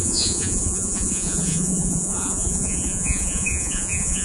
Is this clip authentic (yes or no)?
no